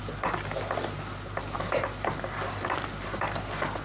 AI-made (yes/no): no